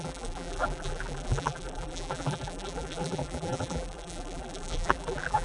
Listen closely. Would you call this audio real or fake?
fake